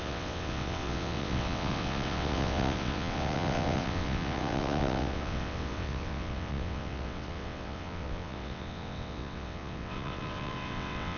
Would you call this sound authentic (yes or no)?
no